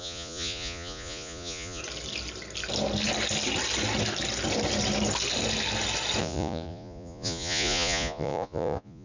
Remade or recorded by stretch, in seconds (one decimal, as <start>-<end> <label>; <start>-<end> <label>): 0.0-1.8 remade; 1.8-6.2 recorded; 6.2-9.0 remade